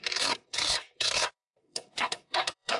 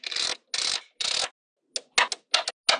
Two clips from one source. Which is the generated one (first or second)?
first